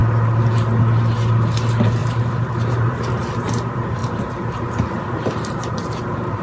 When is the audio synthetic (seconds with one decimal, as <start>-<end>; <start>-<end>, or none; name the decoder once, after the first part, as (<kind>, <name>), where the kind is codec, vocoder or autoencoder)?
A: 2.0-3.1 (vocoder, BigVGAN v2)